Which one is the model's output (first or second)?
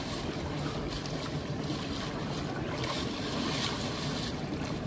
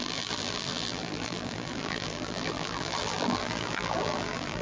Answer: second